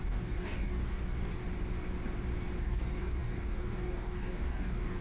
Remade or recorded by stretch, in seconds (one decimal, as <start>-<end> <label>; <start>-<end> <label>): 0.0-1.4 remade; 1.4-2.6 recorded; 2.6-5.0 remade